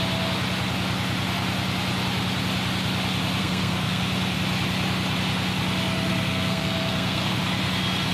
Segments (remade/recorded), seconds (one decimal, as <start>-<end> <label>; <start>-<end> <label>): 0.0-3.4 recorded; 3.4-4.0 remade; 4.0-6.1 recorded; 6.1-7.4 remade; 7.4-8.1 recorded